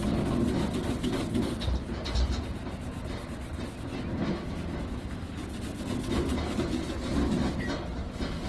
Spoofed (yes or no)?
no